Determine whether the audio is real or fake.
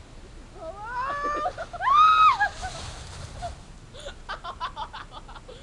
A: real